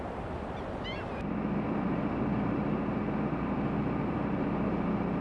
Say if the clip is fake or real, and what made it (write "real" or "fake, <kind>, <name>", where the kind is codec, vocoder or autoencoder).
real